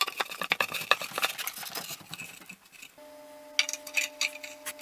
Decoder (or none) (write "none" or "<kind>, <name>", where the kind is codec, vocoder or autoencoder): none